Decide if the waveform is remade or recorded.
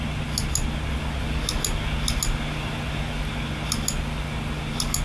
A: recorded